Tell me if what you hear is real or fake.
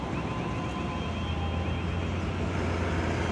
real